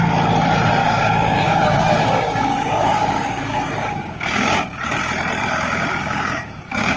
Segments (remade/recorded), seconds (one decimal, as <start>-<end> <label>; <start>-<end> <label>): 0.0-0.8 recorded; 0.8-5.0 remade; 5.0-5.4 recorded; 5.4-7.0 remade